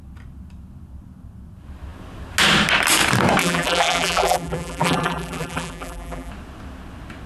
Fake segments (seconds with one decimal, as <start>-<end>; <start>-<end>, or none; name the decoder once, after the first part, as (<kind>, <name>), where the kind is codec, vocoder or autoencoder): 3.4-6.3 (vocoder, BigVGAN v2)